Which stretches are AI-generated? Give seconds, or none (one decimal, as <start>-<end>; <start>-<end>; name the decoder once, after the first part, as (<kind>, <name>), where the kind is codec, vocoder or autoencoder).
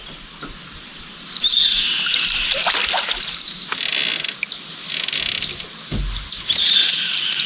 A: none